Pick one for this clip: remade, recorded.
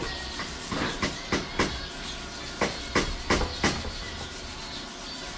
recorded